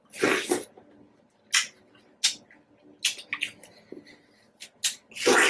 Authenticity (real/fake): real